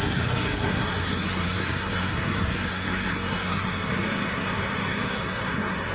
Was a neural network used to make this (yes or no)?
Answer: yes